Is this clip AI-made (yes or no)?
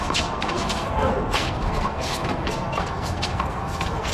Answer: yes